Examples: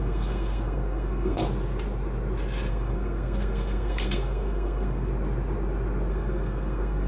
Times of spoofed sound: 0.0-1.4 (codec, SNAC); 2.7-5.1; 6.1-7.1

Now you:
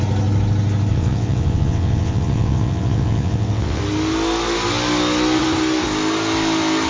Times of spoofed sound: 0.9-3.8 (vocoder, WaveNeXt)

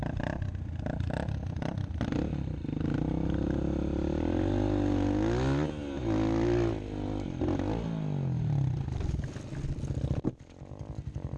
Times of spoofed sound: none

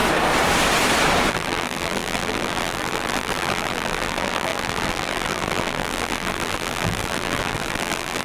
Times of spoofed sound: 1.3-8.2 (vocoder, BigVGAN v2)